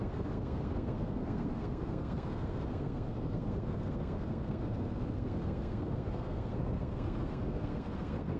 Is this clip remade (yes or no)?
yes